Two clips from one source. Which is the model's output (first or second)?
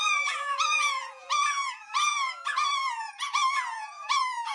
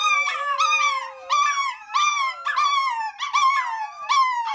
first